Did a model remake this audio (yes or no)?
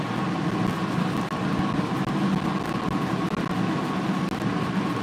no